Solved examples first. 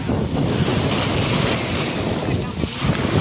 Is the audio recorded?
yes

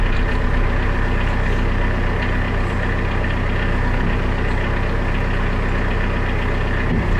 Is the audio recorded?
yes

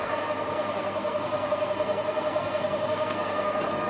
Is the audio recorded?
no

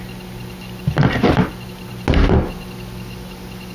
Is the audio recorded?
yes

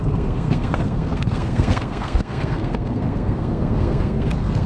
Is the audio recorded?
no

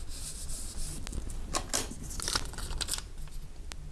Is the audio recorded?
yes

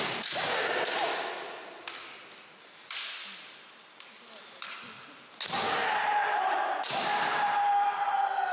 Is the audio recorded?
yes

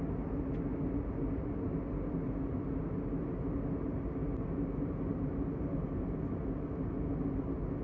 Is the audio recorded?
yes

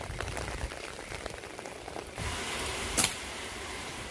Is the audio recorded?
yes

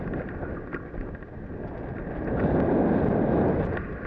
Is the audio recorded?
yes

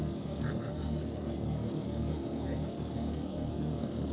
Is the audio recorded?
no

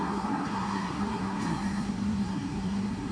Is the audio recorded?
no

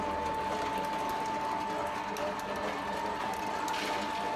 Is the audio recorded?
yes